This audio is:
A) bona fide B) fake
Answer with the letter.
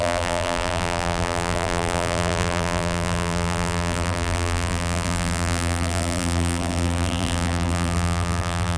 B